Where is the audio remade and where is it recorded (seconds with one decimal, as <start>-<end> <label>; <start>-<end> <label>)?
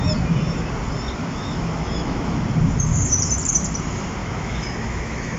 0.0-1.2 recorded; 1.2-2.4 remade; 2.4-4.2 recorded; 4.2-5.4 remade